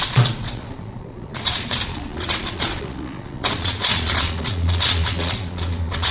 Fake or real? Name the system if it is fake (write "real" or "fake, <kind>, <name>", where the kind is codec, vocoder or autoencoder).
fake, vocoder, Vocos